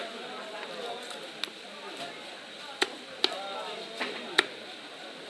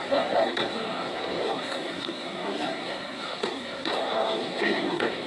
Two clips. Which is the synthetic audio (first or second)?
second